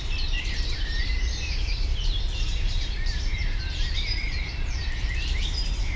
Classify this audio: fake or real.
fake